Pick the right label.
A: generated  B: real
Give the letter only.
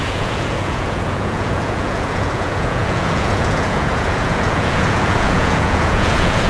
A